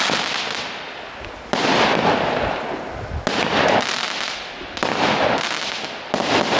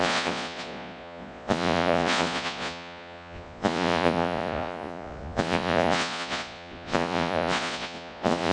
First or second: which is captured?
first